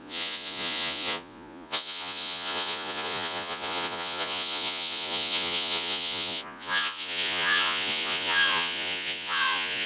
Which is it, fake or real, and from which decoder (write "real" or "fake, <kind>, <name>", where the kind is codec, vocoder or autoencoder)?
fake, vocoder, Vocos